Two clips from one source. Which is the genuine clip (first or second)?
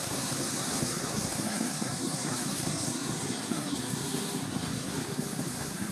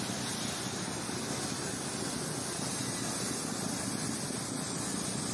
second